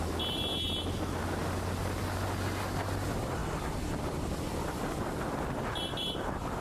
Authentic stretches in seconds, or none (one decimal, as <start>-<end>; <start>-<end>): 0.0-6.6